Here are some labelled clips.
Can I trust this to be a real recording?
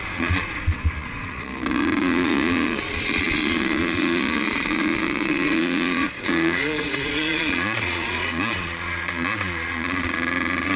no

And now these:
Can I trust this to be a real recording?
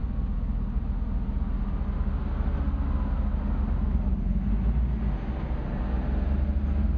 yes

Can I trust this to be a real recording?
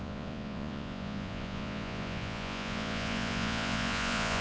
no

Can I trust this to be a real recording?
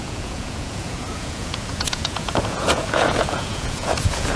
no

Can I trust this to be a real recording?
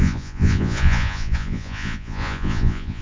no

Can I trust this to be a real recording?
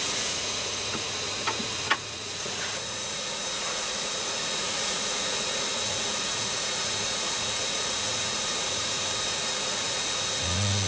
no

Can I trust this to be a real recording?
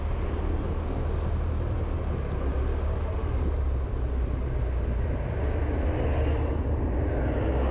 yes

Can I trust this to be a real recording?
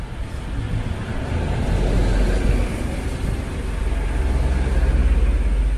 yes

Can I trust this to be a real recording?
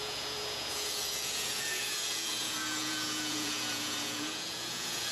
no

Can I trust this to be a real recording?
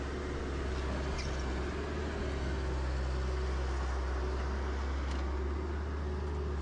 yes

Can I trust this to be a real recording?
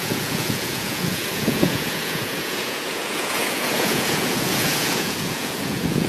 no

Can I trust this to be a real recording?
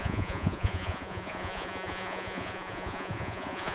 no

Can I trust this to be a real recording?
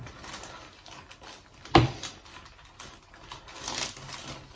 yes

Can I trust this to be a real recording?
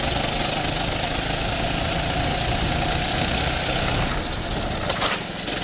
yes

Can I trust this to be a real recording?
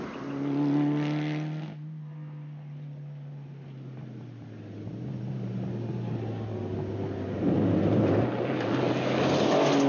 yes